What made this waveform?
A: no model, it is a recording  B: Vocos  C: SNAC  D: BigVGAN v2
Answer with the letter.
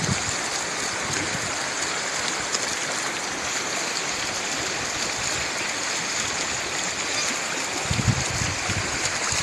A